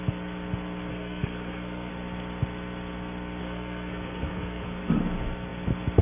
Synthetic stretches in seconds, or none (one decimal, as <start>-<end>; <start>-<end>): 0.9-1.9; 3.4-4.8

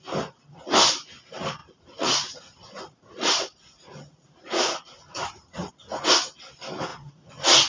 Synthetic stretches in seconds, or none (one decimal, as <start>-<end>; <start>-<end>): 1.6-5.7; 6.9-7.7

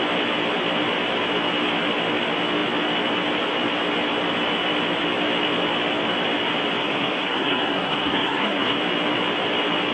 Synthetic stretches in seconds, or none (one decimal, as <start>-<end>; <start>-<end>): 6.8-8.8